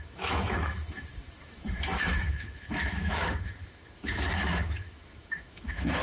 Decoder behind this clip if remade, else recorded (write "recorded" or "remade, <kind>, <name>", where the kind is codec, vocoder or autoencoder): remade, autoencoder, DAC-VAE